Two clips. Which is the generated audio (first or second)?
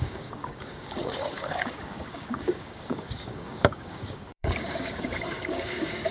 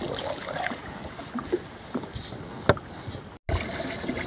first